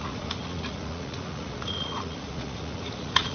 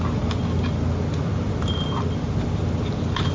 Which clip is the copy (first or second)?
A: first